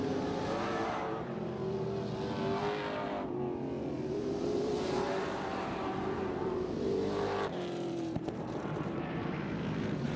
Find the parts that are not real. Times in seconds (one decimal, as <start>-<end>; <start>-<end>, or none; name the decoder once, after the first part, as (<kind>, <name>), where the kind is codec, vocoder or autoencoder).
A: 0.0-1.6 (vocoder, BigVGAN v2); 4.1-10.2